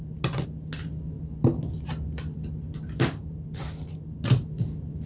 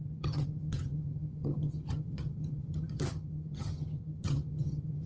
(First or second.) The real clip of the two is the first